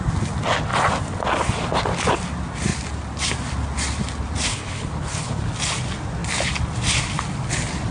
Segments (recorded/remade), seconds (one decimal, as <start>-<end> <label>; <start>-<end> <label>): 0.0-4.5 recorded; 4.5-5.4 remade; 5.4-7.9 recorded